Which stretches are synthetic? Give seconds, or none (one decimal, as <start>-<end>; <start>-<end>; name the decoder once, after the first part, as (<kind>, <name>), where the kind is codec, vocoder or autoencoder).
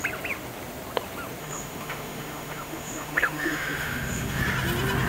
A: 1.4-4.4 (autoencoder, DAC-VAE)